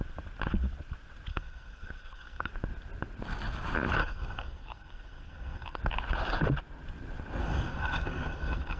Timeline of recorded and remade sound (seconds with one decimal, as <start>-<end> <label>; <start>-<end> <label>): 0.0-1.3 recorded; 1.3-2.5 remade; 2.5-4.0 recorded; 4.0-5.8 remade; 5.8-7.4 recorded; 7.4-8.8 remade